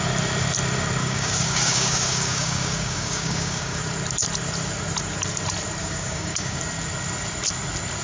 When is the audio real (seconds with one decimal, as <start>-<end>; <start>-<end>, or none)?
0.0-1.0; 3.8-5.8; 6.6-8.0